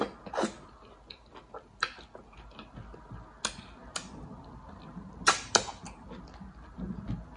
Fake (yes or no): no